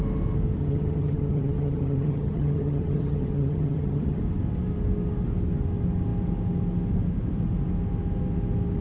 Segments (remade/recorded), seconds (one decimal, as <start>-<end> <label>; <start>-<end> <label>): 0.0-0.6 recorded; 0.6-4.2 remade; 4.2-8.8 recorded